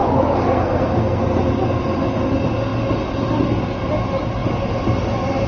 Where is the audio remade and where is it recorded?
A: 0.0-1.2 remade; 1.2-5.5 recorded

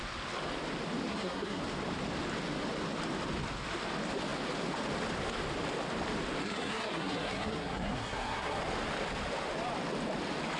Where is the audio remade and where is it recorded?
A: 0.0-1.1 recorded; 1.1-1.6 remade; 1.6-6.4 recorded; 6.4-8.6 remade; 8.6-10.6 recorded

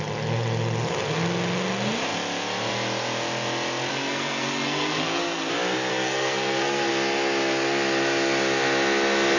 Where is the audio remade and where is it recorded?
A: 0.0-3.9 recorded; 3.9-5.5 remade; 5.5-5.9 recorded; 5.9-6.9 remade; 6.9-9.4 recorded

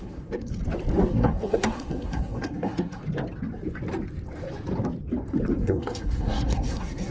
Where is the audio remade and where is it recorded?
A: 0.0-0.5 remade; 0.5-1.1 recorded; 1.1-3.0 remade; 3.0-5.6 recorded; 5.6-7.1 remade

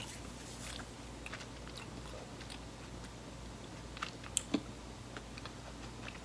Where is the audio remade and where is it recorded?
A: 0.0-6.2 recorded

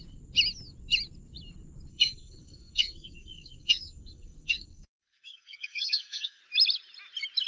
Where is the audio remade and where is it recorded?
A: 0.0-1.9 recorded; 1.9-6.4 remade; 6.4-7.5 recorded